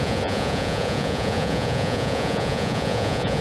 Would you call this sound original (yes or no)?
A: no